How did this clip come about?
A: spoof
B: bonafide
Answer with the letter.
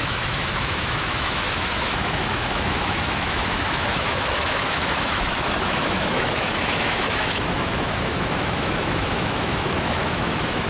A